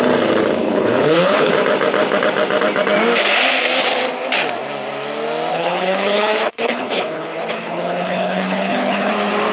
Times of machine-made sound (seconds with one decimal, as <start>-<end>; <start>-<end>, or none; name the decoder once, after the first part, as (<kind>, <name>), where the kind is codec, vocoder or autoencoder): 0.6-1.5 (codec, HILCodec); 5.5-9.1

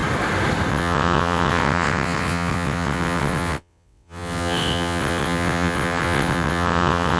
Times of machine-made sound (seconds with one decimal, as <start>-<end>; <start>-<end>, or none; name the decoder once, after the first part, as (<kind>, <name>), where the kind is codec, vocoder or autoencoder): 0.7-7.2 (vocoder, WaveNeXt)

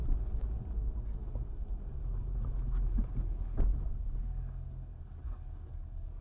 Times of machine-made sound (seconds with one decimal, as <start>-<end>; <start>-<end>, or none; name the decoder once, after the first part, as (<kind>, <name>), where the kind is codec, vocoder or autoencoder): none